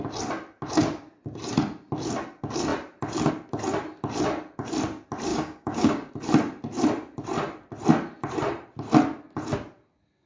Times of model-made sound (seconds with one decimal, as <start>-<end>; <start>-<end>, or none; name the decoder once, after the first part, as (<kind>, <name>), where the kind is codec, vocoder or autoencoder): 5.3-6.1 (codec, DAC)